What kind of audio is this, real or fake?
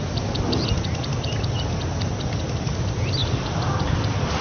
real